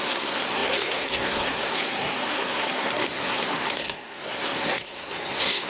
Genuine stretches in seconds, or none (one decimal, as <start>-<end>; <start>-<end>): none